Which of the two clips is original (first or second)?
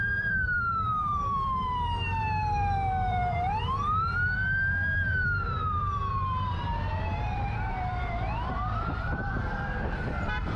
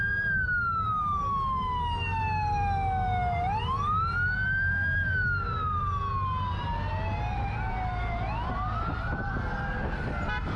second